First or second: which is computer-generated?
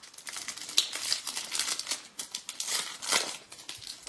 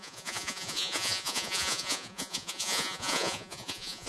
second